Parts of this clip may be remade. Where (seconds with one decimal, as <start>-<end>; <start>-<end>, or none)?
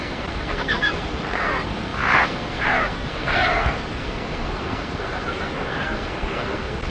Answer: 0.0-6.9